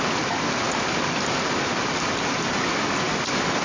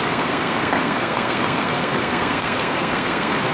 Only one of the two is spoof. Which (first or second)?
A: second